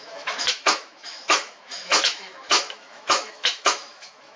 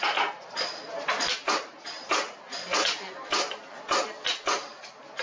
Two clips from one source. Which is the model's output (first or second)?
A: first